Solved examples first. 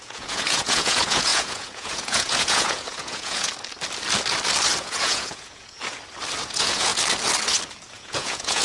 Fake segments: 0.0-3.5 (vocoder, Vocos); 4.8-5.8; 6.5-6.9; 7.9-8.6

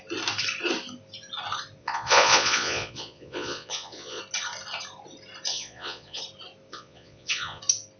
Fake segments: 1.8-4.2 (vocoder, Vocos); 5.5-6.2; 6.7-7.6

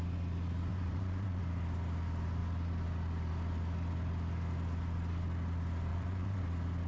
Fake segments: 0.7-1.4 (vocoder, Vocos); 5.9-6.4

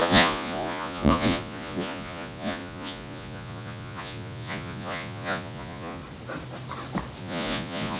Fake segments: 0.0-6.0 (vocoder, Vocos); 7.2-8.0

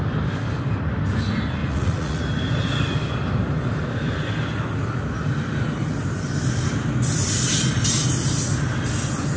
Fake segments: 1.6-2.2 (vocoder, Vocos)